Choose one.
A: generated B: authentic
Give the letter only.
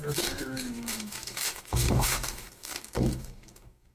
A